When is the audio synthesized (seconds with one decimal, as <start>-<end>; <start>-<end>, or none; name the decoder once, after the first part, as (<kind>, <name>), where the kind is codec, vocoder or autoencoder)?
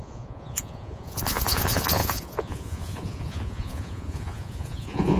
0.0-5.2 (vocoder, Vocos)